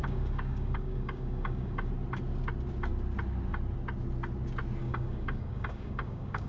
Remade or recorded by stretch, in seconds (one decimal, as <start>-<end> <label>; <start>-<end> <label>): 0.0-1.9 remade; 1.9-4.8 recorded; 4.8-6.5 remade